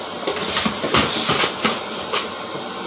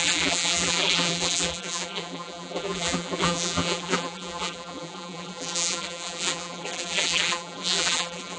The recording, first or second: first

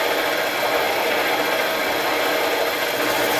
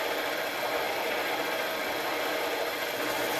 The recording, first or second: first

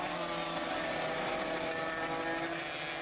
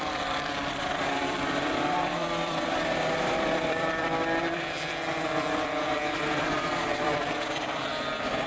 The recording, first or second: first